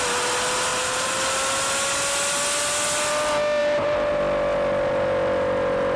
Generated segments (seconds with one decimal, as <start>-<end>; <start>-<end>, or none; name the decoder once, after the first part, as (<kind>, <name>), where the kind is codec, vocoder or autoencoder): 0.7-1.2 (vocoder, BigVGAN v2); 3.6-4.2